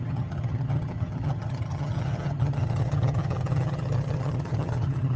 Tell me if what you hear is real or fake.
fake